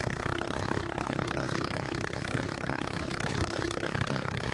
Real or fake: fake